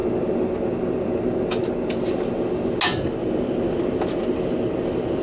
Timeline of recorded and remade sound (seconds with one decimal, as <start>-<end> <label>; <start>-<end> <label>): 0.0-5.2 recorded